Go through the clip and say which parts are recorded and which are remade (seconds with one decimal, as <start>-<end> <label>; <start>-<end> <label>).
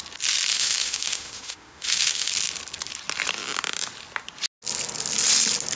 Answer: 0.0-0.5 recorded; 0.5-2.3 remade; 2.3-5.8 recorded